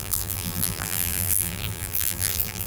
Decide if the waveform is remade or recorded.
remade